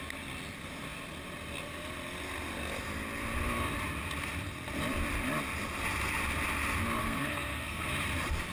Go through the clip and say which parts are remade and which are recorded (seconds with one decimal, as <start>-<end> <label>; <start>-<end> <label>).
0.0-7.0 recorded; 7.0-7.9 remade; 7.9-8.5 recorded